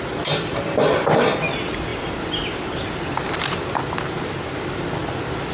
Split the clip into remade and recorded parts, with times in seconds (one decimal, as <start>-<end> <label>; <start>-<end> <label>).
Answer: 0.0-5.5 recorded